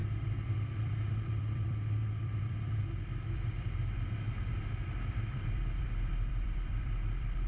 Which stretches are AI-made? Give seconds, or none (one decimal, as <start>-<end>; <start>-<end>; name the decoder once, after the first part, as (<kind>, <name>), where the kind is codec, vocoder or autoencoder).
0.0-7.5 (vocoder, BigVGAN v2)